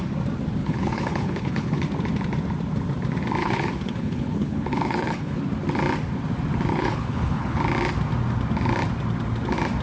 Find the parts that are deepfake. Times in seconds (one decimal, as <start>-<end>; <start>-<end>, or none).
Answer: 0.6-1.8; 3.4-5.4; 6.7-7.6